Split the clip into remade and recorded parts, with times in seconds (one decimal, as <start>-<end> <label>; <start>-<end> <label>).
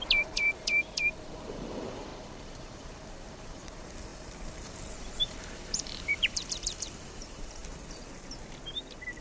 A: 0.0-7.6 remade; 7.6-9.2 recorded